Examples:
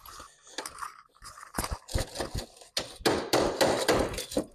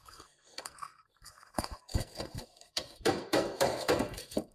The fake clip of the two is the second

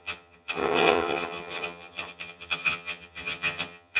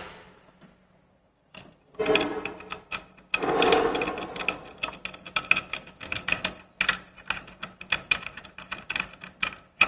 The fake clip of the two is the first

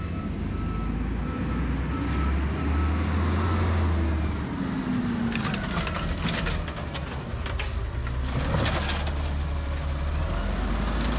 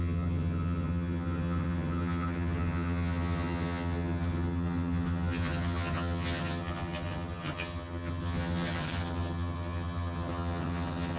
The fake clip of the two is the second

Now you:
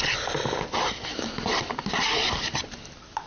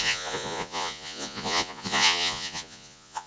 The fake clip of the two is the second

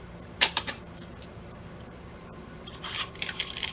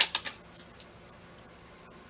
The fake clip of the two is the first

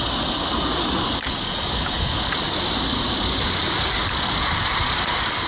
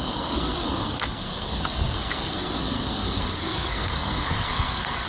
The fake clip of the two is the second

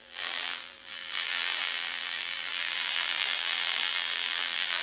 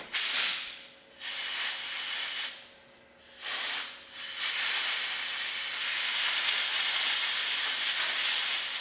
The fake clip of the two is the first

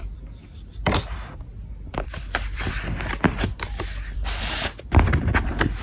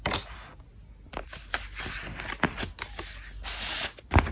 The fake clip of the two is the first